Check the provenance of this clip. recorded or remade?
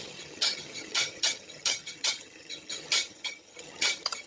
remade